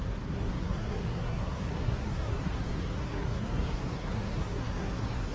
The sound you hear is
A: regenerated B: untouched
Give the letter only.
A